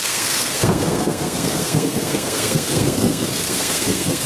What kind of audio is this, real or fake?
fake